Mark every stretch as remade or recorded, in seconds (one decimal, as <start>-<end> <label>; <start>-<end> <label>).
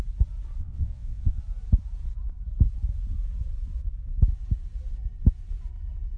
0.0-0.6 recorded; 0.6-1.4 remade; 1.4-6.2 recorded